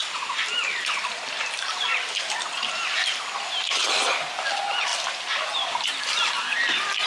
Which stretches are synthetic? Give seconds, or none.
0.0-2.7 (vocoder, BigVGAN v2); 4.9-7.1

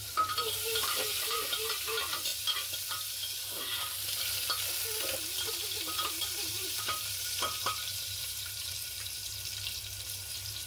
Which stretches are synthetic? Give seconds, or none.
0.0-2.3 (vocoder, BigVGAN v2); 6.1-9.2; 10.2-10.7

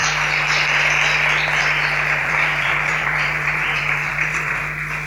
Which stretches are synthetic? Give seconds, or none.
2.2-4.6 (vocoder, BigVGAN v2)

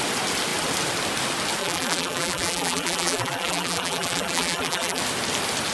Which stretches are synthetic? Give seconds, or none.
1.6-5.0 (vocoder, BigVGAN v2)

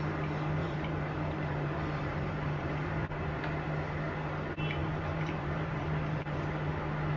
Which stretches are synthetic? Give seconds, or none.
0.6-3.4 (vocoder, BigVGAN v2); 4.8-6.7

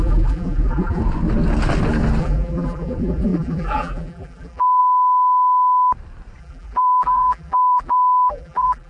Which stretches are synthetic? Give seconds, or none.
0.0-1.0 (vocoder, BigVGAN v2); 2.2-4.8; 6.4-8.9

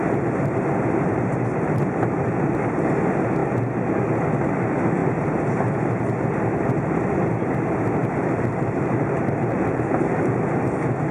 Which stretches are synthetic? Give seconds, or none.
8.0-10.3 (vocoder, BigVGAN v2)

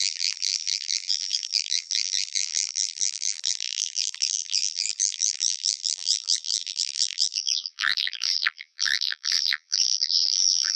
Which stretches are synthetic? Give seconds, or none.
0.0-10.8 (vocoder, BigVGAN v2)